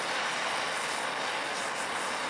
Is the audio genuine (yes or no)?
yes